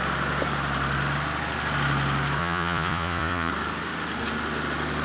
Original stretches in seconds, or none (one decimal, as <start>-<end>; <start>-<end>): 0.0-2.4; 3.5-5.0